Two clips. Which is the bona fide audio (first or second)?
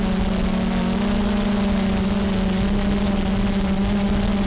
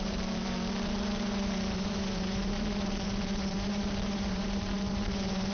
first